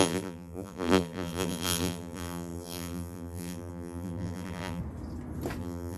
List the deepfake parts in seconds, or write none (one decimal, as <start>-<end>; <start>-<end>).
0.0-4.8; 5.6-6.0